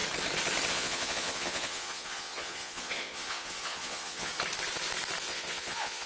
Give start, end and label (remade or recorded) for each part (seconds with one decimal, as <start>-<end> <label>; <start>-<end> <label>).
0.0-0.7 recorded; 0.7-4.3 remade; 4.3-5.2 recorded; 5.2-6.1 remade